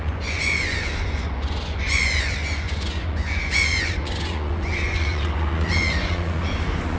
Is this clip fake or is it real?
fake